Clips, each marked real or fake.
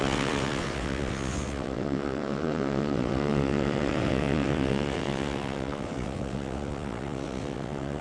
fake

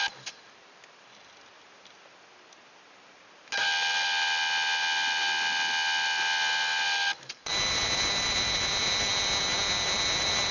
real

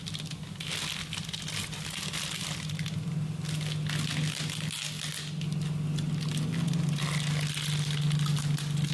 real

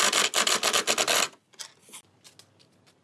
real